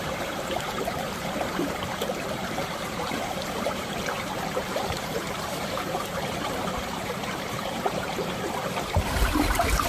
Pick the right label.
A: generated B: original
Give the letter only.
A